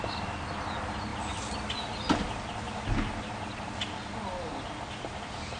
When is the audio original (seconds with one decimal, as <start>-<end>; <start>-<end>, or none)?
0.0-5.6